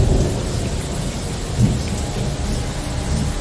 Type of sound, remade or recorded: recorded